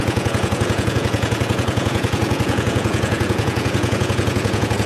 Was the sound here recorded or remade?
remade